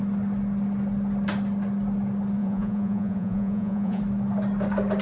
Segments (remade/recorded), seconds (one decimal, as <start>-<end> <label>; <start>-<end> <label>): 0.0-2.4 recorded; 2.4-4.0 remade; 4.0-5.0 recorded